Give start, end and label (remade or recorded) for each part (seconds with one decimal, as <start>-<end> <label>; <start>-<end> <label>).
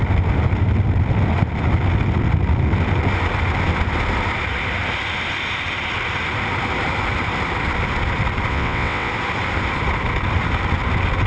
0.0-8.5 recorded; 8.5-9.1 remade; 9.1-11.3 recorded